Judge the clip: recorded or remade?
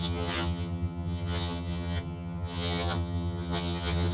remade